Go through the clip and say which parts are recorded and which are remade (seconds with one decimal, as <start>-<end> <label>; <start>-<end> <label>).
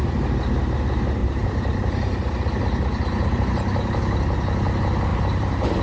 0.0-1.2 recorded; 1.2-3.4 remade; 3.4-5.1 recorded; 5.1-5.8 remade